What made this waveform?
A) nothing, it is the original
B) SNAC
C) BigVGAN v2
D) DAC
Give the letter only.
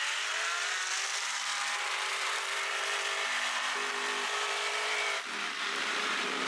C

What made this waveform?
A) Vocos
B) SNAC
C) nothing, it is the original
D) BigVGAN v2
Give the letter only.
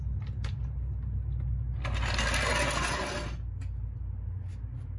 C